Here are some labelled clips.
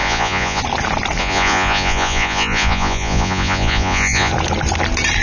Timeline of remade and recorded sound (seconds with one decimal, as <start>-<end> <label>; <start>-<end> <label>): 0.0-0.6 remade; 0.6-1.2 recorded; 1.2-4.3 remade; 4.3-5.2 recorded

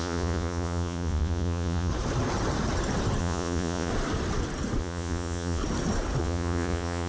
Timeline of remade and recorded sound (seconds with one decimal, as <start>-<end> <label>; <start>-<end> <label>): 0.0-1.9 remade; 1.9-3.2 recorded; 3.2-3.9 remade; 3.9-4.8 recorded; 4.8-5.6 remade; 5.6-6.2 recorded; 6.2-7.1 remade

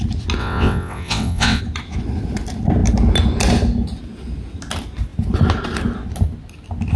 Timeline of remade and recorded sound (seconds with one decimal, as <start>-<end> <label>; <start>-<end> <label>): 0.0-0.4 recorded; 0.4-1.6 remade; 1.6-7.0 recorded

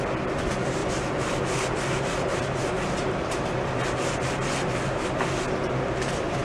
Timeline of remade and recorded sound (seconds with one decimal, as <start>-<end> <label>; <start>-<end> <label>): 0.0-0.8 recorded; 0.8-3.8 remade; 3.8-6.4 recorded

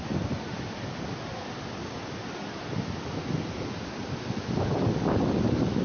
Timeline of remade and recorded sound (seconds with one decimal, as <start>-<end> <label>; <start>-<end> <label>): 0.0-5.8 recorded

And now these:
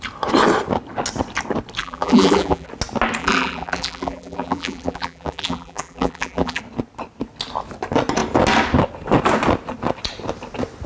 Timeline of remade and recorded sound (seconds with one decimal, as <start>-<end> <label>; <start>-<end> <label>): 0.0-1.8 recorded; 1.8-2.7 remade; 2.7-3.2 recorded; 3.2-6.6 remade; 6.6-10.9 recorded